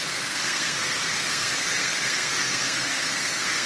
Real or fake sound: fake